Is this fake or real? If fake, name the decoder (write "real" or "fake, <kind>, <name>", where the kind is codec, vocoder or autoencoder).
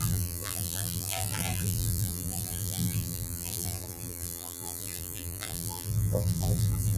fake, vocoder, BigVGAN v2